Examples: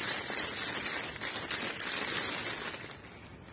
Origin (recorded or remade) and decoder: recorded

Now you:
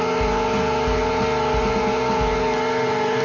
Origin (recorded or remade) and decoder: recorded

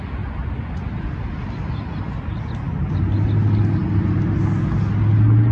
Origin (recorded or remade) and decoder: recorded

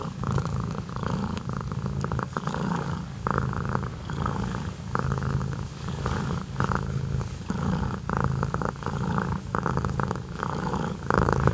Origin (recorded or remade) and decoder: remade, codec, DAC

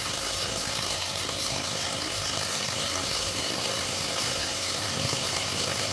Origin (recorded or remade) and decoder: remade, codec, SNAC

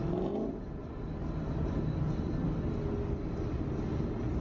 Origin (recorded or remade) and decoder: recorded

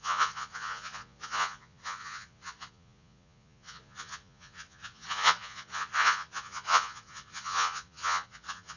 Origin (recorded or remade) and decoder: remade, vocoder, Vocos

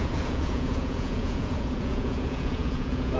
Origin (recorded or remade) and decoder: remade, vocoder, Vocos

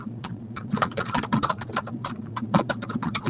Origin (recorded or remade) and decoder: remade, vocoder, Vocos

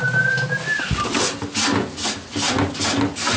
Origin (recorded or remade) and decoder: recorded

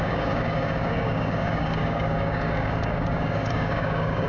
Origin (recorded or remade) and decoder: remade, codec, DAC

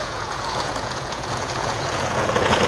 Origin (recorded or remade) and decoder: remade, vocoder, Vocos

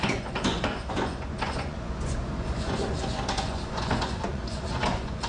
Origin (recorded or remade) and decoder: remade, vocoder, Vocos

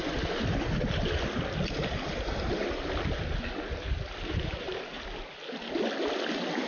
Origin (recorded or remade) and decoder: recorded